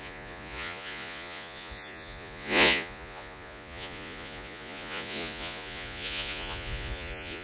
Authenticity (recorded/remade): remade